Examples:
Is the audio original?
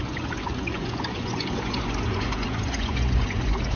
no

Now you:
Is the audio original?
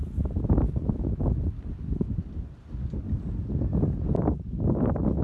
yes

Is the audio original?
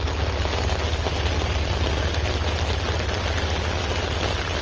yes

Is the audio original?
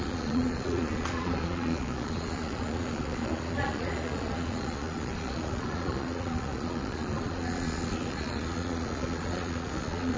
no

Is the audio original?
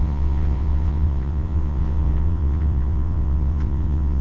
no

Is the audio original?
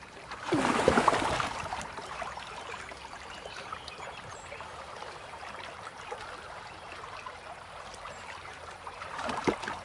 no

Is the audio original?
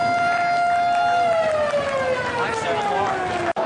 yes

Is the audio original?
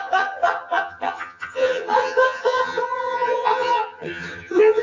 no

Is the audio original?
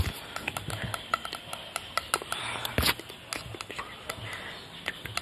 yes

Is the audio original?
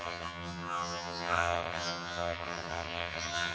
no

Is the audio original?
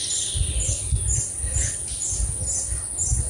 yes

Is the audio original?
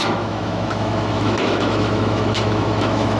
no